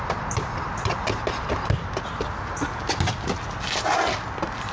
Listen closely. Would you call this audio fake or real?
real